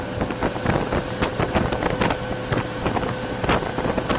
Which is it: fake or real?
real